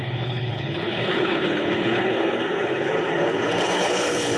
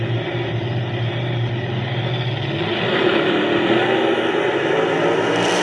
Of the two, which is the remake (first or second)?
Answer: first